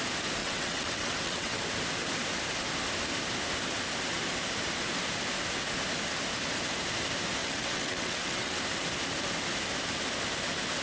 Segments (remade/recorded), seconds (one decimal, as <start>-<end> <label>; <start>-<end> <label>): 0.0-0.4 recorded; 0.4-1.6 remade; 1.6-7.4 recorded; 7.4-8.6 remade; 8.6-10.8 recorded

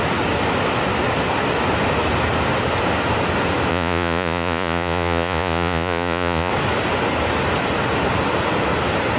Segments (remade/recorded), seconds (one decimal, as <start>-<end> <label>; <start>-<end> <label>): 0.0-3.7 recorded; 3.7-6.5 remade; 6.5-9.2 recorded

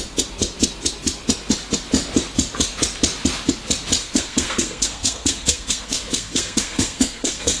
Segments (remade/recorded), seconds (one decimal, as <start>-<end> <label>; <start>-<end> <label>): 0.0-4.0 recorded; 4.0-7.6 remade

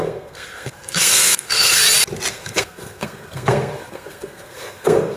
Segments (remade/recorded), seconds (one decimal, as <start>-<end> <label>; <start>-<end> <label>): 0.0-1.8 remade; 1.8-2.3 recorded; 2.3-5.2 remade

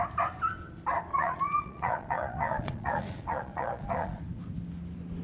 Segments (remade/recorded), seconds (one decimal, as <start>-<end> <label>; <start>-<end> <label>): 0.0-1.1 recorded; 1.1-4.2 remade; 4.2-5.2 recorded

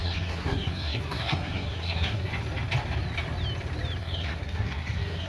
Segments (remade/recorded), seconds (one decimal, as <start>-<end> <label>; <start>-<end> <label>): 0.0-2.3 remade; 2.3-4.0 recorded; 4.0-5.3 remade

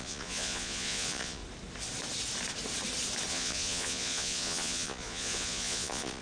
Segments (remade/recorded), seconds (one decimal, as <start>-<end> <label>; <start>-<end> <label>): 0.0-1.4 remade; 1.4-3.3 recorded; 3.3-6.2 remade

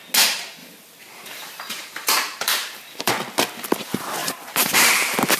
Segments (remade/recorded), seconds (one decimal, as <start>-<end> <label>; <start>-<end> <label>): 0.0-0.6 recorded; 0.6-3.1 remade; 3.1-4.2 recorded; 4.2-4.9 remade; 4.9-5.4 recorded